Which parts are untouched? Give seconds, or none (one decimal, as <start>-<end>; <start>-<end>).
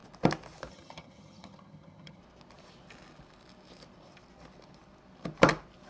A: 0.0-0.7; 2.2-5.9